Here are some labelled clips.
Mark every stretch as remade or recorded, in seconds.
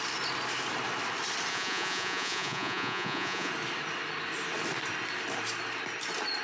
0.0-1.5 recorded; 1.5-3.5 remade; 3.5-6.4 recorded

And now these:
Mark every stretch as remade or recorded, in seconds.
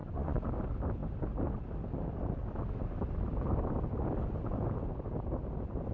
0.0-0.5 remade; 0.5-5.9 recorded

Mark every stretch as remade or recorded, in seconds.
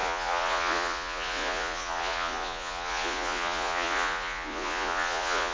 0.0-5.5 remade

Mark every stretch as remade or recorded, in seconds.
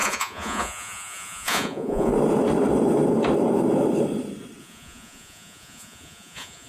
0.0-2.1 remade; 2.1-4.6 recorded; 4.6-6.7 remade